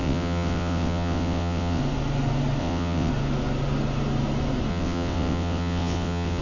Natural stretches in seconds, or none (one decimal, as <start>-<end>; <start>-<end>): 1.8-2.6; 3.1-4.7